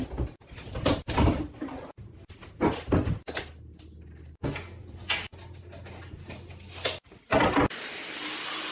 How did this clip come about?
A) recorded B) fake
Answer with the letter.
A